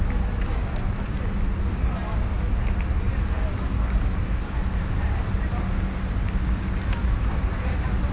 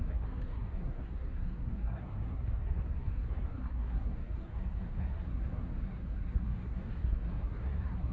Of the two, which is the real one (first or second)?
first